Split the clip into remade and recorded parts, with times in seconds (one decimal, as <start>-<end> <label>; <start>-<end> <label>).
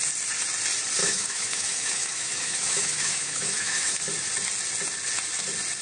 0.0-1.0 recorded; 1.0-4.0 remade; 4.0-5.8 recorded